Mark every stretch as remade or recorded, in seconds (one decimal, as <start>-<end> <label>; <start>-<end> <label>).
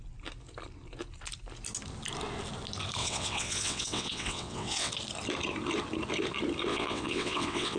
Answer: 0.0-3.0 recorded; 3.0-4.9 remade; 4.9-6.7 recorded; 6.7-7.8 remade